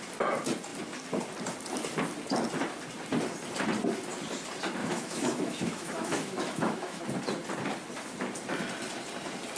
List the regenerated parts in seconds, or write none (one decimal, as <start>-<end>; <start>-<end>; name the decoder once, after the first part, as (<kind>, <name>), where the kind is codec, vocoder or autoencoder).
4.8-7.0 (autoencoder, DAC-VAE)